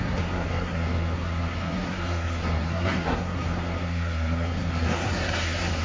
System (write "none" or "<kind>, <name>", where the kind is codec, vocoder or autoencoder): codec, SNAC